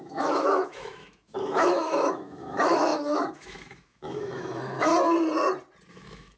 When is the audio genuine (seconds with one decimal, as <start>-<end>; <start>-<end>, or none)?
4.9-5.9